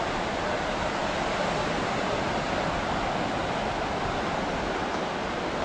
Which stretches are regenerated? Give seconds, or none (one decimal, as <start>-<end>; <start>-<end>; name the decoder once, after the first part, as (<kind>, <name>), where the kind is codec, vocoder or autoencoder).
none